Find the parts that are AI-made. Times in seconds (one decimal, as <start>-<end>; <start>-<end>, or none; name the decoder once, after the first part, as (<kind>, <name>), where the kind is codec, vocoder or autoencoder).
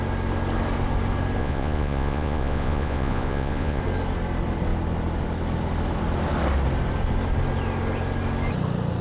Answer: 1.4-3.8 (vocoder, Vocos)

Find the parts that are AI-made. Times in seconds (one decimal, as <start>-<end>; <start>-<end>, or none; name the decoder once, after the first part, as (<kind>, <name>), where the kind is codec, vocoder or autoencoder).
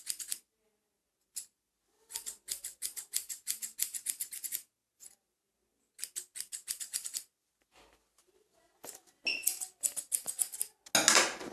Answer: none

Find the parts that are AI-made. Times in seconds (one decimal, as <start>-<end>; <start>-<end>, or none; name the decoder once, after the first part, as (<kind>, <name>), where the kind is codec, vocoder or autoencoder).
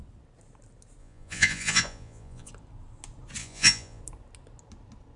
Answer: 1.0-2.5 (vocoder, Vocos); 3.4-4.0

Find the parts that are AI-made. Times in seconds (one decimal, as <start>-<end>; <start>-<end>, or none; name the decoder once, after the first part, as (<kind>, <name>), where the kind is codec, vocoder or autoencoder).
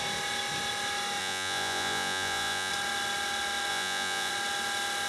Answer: 1.2-2.7 (vocoder, Vocos); 3.7-4.3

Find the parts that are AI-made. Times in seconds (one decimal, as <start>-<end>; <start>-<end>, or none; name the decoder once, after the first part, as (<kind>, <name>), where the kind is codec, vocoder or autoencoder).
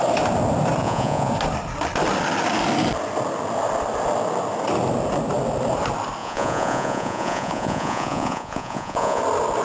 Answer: 0.8-1.3 (vocoder, Vocos); 6.2-9.2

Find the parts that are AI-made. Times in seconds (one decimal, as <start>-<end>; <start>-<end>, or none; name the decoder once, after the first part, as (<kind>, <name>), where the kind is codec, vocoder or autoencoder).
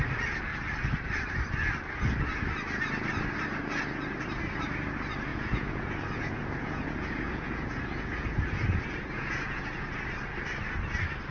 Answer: 5.3-10.0 (vocoder, Vocos)